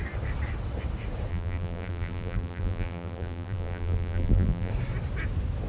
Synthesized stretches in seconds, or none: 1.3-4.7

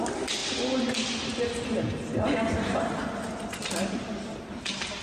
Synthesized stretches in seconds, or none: none

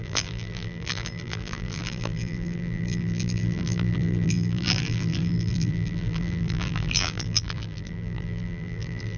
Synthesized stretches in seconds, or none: 0.0-9.2